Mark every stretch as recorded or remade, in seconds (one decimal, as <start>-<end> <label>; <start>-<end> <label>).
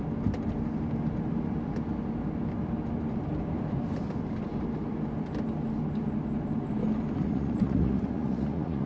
0.0-7.2 recorded; 7.2-8.9 remade